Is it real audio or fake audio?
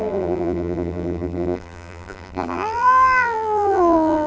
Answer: fake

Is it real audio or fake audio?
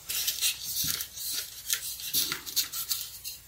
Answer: fake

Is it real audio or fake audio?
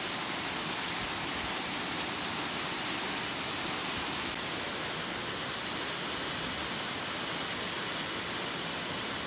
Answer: real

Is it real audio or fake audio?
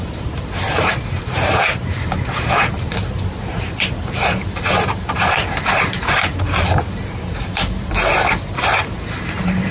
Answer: fake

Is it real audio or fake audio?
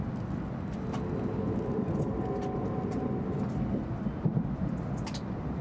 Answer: real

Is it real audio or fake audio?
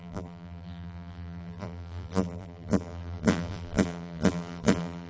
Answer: fake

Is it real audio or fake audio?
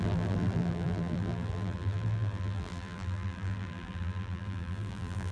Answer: fake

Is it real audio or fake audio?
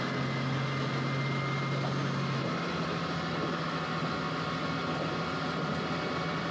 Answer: real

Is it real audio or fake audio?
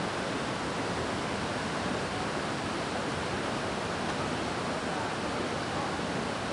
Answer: real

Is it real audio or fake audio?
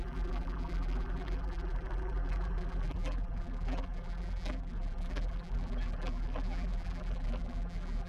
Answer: fake